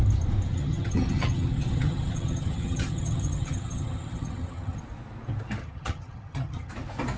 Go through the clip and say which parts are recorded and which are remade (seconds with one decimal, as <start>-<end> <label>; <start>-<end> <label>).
0.0-0.5 recorded; 0.5-4.8 remade; 4.8-5.6 recorded; 5.6-6.7 remade; 6.7-7.2 recorded